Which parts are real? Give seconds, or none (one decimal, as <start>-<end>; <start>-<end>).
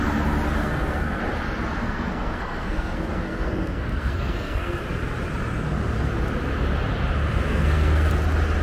0.0-0.6; 1.2-1.8; 4.8-7.5; 8.1-8.6